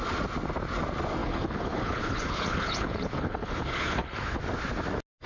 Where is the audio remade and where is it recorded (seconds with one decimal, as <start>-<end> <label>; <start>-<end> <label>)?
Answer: 0.0-1.2 recorded; 1.2-4.4 remade; 4.4-5.3 recorded